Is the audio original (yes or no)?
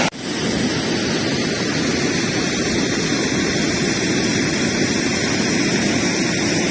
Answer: yes